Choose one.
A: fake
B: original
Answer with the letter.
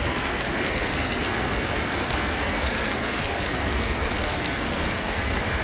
A